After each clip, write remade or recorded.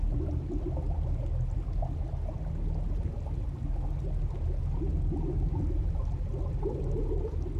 recorded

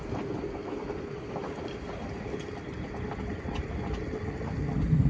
recorded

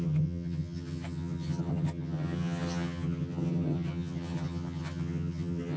remade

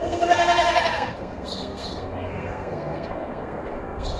remade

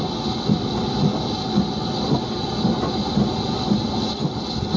recorded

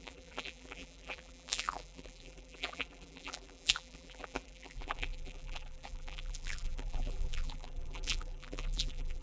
remade